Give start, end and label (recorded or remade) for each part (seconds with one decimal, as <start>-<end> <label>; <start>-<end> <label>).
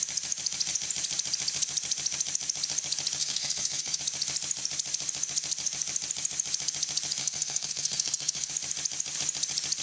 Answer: 0.0-3.2 recorded; 3.2-4.0 remade; 4.0-7.2 recorded; 7.2-8.5 remade; 8.5-9.8 recorded